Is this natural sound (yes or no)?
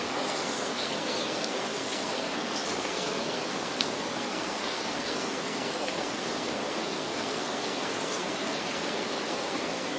no